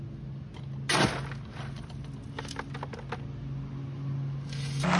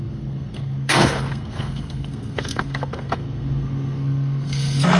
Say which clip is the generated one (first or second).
second